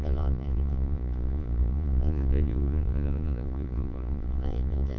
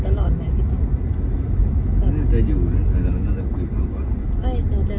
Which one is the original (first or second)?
second